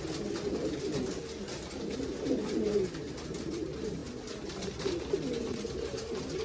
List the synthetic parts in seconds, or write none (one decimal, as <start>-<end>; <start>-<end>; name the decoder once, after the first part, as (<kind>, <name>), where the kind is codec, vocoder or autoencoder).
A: none